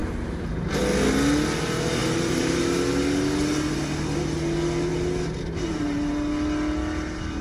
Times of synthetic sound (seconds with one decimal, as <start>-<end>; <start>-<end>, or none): 0.0-0.8; 2.0-2.6